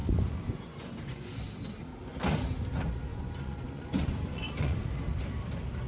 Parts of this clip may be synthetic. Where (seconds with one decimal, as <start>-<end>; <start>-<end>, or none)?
0.0-1.5; 3.1-4.8